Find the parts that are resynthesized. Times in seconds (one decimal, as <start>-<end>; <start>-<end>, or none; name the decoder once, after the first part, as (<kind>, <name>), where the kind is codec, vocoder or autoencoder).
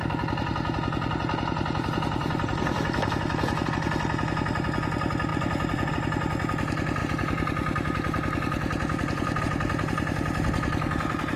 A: 2.2-3.1 (vocoder, BigVGAN v2); 5.3-5.9; 7.0-9.4